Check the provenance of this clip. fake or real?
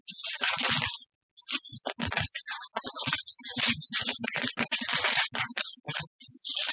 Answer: real